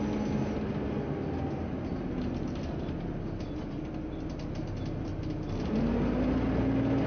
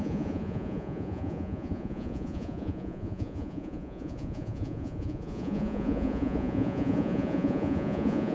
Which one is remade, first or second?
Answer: second